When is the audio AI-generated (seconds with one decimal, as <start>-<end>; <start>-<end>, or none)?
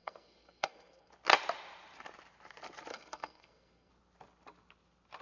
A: 0.0-1.1; 2.9-3.9